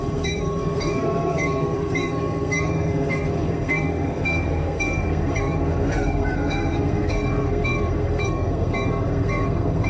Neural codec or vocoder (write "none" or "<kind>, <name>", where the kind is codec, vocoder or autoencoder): codec, SNAC